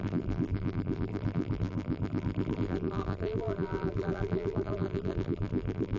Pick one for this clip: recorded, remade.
remade